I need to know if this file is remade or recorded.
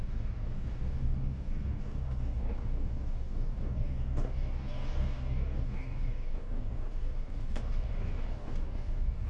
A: remade